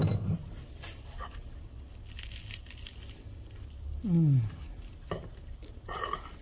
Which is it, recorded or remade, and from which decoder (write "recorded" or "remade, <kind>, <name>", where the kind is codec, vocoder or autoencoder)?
recorded